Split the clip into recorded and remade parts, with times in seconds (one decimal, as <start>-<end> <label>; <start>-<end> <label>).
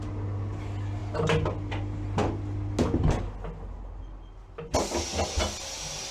0.0-6.1 recorded